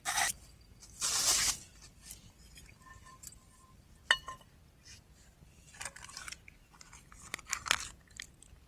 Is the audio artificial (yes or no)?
no